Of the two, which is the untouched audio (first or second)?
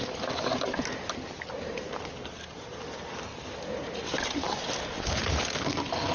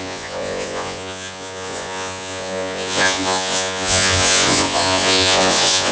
first